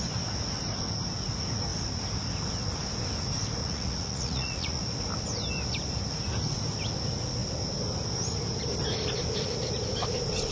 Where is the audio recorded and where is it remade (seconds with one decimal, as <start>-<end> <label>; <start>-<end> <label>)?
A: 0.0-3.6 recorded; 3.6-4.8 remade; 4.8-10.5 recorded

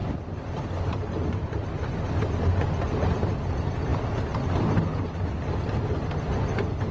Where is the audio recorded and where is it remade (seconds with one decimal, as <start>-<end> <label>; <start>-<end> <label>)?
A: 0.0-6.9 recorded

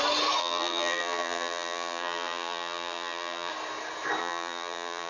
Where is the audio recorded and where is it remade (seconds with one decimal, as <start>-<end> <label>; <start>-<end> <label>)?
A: 0.0-0.4 recorded; 0.4-3.5 remade; 3.5-4.2 recorded; 4.2-5.1 remade

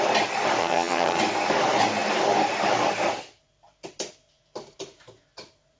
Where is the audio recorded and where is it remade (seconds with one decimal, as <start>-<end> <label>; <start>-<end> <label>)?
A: 0.0-0.6 recorded; 0.6-1.2 remade; 1.2-5.8 recorded